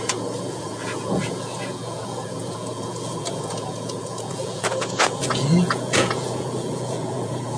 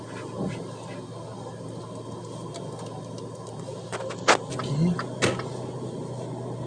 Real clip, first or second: second